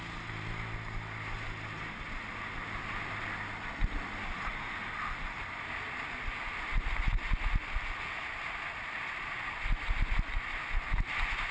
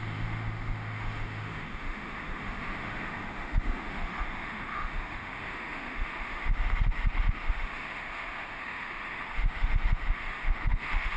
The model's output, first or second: second